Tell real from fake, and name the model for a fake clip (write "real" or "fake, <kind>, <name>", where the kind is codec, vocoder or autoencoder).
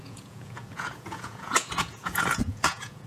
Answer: fake, vocoder, Vocos